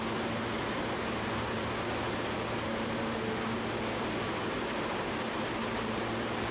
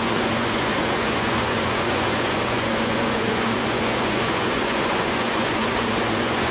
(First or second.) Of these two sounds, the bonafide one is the first